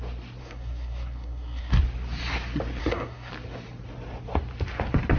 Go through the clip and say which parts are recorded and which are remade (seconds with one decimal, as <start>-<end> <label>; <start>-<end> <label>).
0.0-0.4 recorded; 0.4-1.8 remade; 1.8-2.8 recorded; 2.8-3.3 remade; 3.3-5.2 recorded